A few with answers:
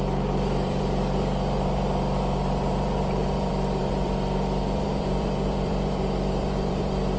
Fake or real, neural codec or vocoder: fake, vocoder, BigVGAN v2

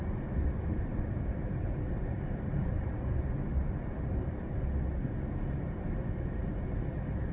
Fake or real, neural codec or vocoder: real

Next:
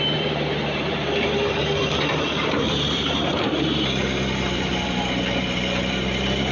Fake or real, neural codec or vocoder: fake, vocoder, BigVGAN v2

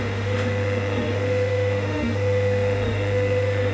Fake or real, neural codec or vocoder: fake, autoencoder, DAC-VAE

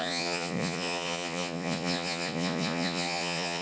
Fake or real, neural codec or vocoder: fake, vocoder, Vocos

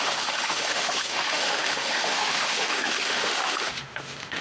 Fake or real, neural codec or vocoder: fake, autoencoder, DAC-VAE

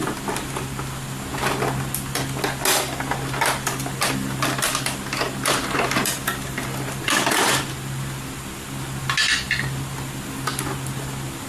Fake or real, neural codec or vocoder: real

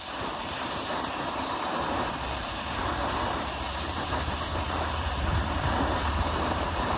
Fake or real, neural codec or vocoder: fake, vocoder, BigVGAN v2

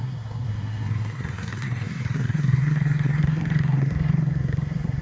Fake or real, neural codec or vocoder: fake, codec, SNAC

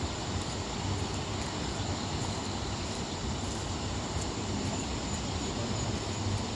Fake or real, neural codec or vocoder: real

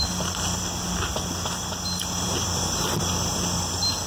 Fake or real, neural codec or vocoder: real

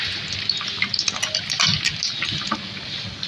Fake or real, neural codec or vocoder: real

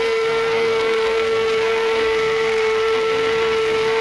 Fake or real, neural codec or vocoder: fake, codec, SNAC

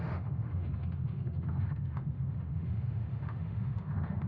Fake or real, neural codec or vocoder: fake, autoencoder, DAC-VAE